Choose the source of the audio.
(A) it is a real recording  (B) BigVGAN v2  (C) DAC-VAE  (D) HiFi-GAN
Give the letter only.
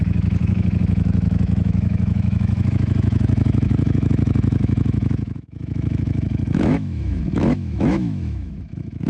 C